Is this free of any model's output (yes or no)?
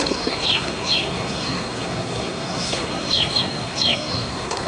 no